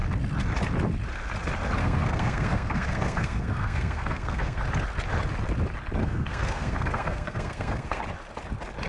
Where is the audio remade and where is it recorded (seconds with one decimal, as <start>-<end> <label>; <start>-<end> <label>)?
0.0-1.8 recorded; 1.8-4.6 remade; 4.6-6.0 recorded; 6.0-8.0 remade; 8.0-8.9 recorded